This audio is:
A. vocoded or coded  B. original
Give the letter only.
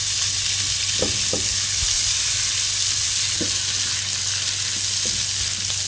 B